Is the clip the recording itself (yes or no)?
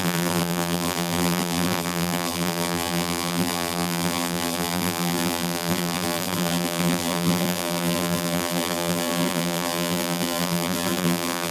no